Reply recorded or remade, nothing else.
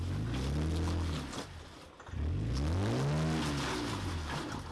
recorded